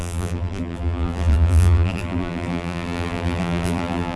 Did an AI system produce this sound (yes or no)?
yes